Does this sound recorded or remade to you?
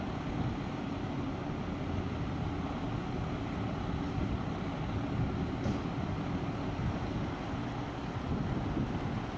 recorded